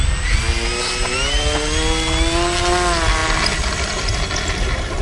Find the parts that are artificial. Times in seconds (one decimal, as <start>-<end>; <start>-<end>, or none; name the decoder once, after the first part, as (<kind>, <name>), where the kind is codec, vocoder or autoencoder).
none

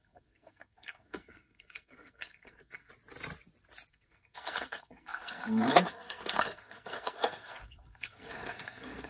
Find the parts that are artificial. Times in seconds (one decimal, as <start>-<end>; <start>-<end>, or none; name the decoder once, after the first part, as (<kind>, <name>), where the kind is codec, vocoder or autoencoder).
0.0-2.9 (codec, SNAC); 3.9-9.1

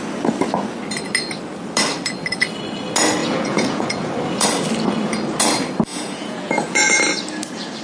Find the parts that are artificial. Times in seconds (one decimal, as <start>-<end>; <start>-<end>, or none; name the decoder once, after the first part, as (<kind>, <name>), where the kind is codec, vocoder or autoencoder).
3.2-4.1 (vocoder, Vocos); 5.9-7.0

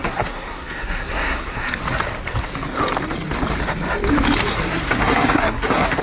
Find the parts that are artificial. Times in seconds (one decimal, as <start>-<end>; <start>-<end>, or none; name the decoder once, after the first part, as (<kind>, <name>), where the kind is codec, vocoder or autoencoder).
0.0-1.7 (codec, SNAC); 4.5-6.0